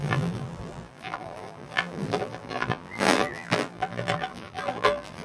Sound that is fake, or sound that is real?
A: fake